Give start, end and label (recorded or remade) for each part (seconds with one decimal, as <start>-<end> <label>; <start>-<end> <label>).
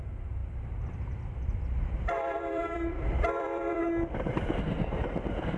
0.0-0.4 recorded; 0.4-3.8 remade; 3.8-5.6 recorded